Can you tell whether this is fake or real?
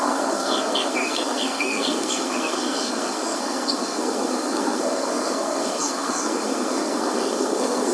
fake